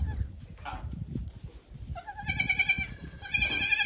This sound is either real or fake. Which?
real